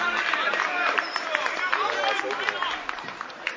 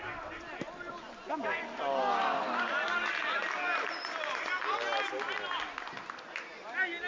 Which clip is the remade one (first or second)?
first